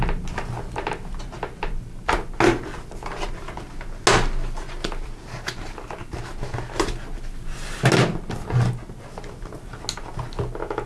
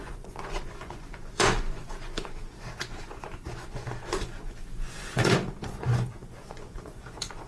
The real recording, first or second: first